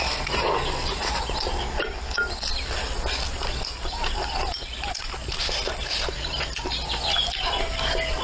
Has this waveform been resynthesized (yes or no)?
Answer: no